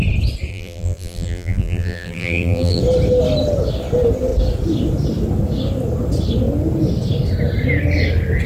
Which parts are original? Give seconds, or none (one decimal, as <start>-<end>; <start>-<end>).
0.0-0.5; 2.8-8.5